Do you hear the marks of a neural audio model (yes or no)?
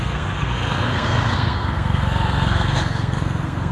yes